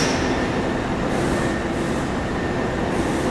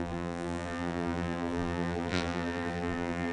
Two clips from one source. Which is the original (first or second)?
first